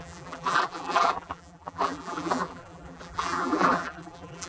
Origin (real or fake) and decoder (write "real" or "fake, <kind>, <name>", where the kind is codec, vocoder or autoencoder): fake, vocoder, BigVGAN v2